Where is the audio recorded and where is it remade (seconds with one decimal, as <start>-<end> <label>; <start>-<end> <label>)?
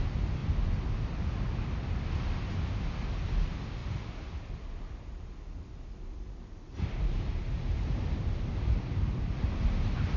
0.0-10.2 recorded